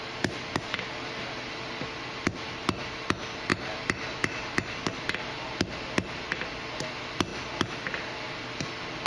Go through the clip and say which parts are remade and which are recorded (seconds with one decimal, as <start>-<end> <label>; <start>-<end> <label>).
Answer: 0.0-9.1 recorded